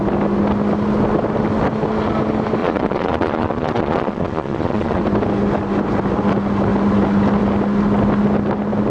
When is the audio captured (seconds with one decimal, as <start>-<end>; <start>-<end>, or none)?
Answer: 0.0-2.6; 5.0-8.9